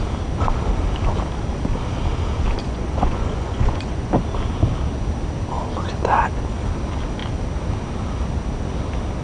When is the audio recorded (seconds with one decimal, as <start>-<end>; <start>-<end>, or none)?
0.0-2.6; 4.1-9.2